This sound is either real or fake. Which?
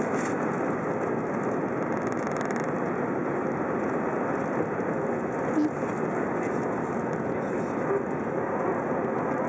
real